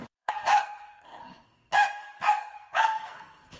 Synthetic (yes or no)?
yes